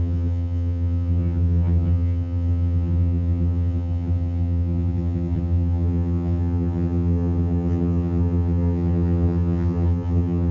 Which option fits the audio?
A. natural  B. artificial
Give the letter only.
B